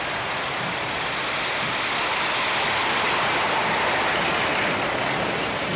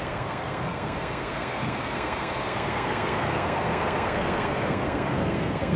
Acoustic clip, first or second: first